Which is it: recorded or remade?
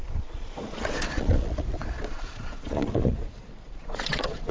remade